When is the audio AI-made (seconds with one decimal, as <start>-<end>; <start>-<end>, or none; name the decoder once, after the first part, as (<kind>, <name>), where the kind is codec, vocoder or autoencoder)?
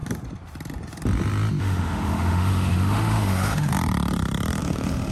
1.6-3.7 (autoencoder, DAC-VAE); 4.6-5.1